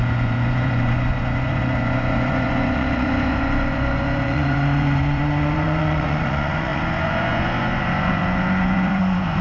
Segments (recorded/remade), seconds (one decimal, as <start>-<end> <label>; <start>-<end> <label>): 0.0-9.4 remade